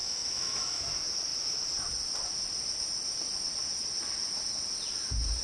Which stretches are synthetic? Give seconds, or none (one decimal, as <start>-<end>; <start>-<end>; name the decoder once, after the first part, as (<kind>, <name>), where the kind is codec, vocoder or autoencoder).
0.0-0.8 (autoencoder, DAC-VAE)